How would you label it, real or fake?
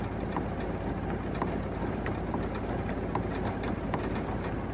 real